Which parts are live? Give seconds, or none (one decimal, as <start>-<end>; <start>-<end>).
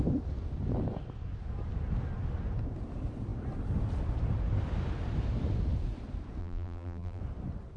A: 0.0-6.4; 7.2-7.8